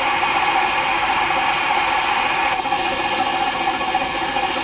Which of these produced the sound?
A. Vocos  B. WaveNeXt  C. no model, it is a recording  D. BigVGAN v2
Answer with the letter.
C